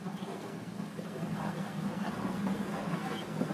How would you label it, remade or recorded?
remade